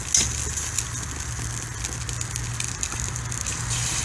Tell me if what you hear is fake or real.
real